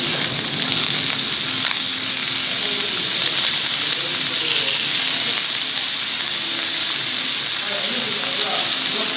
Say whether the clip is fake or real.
real